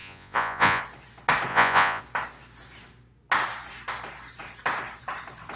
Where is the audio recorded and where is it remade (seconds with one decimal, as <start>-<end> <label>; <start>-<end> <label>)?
0.0-0.8 remade; 0.8-1.5 recorded; 1.5-2.0 remade; 2.0-5.6 recorded